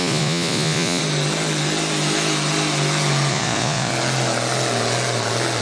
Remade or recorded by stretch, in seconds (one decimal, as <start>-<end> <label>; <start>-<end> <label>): 0.0-1.0 remade; 1.0-3.3 recorded; 3.3-3.9 remade; 3.9-5.6 recorded